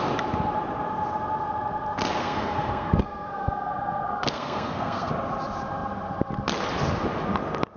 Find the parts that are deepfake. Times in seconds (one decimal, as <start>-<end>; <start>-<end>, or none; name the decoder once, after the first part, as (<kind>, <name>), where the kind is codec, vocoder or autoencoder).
2.2-5.1 (codec, SNAC)